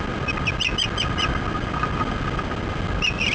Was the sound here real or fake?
real